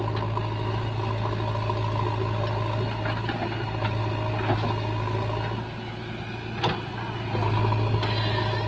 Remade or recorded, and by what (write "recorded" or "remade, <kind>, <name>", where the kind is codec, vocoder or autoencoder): recorded